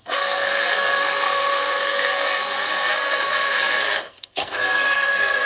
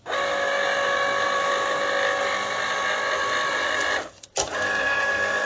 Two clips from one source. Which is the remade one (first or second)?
first